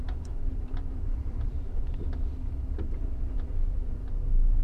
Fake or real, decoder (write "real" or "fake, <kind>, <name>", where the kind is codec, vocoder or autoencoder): fake, vocoder, BigVGAN v2